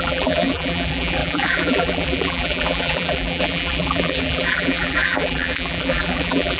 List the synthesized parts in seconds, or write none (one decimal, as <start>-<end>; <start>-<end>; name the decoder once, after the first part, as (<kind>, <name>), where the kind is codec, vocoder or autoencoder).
0.0-6.6 (vocoder, BigVGAN v2)